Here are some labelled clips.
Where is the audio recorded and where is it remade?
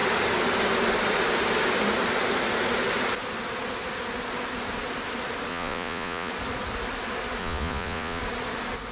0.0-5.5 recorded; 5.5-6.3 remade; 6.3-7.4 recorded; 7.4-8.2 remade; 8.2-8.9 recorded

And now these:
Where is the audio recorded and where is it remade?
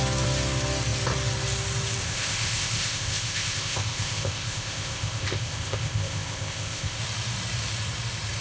0.0-2.0 recorded; 2.0-7.0 remade; 7.0-8.4 recorded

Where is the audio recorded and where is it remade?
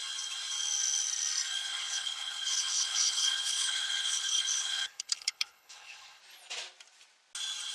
0.0-1.6 recorded; 1.6-6.2 remade; 6.2-7.7 recorded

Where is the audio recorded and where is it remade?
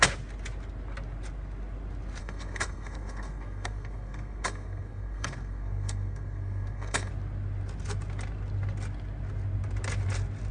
0.0-2.2 recorded; 2.2-7.1 remade; 7.1-10.5 recorded